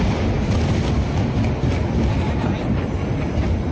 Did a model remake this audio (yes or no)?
no